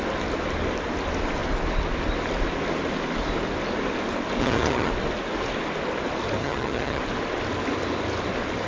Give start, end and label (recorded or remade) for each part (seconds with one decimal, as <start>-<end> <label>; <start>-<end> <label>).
0.0-4.4 recorded; 4.4-4.9 remade; 4.9-6.4 recorded; 6.4-7.0 remade; 7.0-8.7 recorded